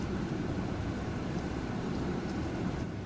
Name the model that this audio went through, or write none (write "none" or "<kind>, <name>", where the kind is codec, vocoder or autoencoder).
vocoder, BigVGAN v2